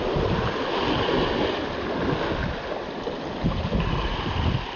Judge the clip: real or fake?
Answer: real